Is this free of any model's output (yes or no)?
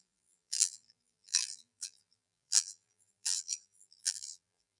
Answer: no